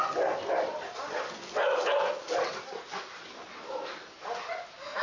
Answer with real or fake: real